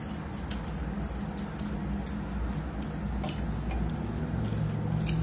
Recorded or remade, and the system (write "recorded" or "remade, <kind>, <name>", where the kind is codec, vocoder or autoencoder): recorded